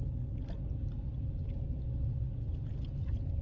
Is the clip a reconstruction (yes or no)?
no